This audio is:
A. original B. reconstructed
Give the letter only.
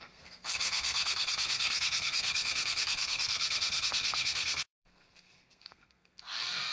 B